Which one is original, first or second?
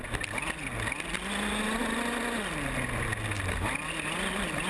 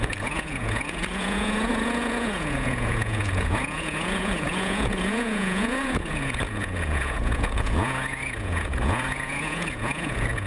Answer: first